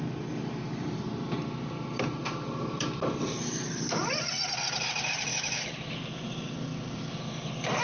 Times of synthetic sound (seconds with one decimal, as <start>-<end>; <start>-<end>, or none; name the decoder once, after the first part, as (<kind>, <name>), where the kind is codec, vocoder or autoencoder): 5.3-5.9 (autoencoder, DAC-VAE)